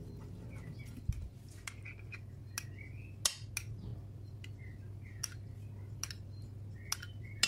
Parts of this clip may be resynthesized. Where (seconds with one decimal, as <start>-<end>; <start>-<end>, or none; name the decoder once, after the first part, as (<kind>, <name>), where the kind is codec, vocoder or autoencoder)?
none